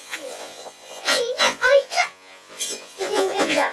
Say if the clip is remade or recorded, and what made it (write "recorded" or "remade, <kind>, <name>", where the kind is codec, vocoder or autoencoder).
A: remade, vocoder, Vocos